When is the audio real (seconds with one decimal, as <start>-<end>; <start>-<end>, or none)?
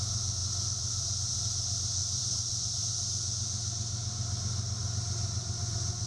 0.0-0.4; 1.4-2.0; 2.9-6.1